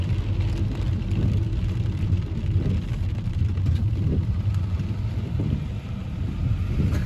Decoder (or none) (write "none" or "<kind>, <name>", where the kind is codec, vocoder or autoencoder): none